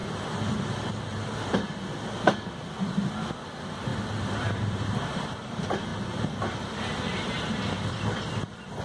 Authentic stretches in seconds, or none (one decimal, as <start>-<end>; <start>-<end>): 0.8-3.9; 5.0-5.9; 8.0-8.8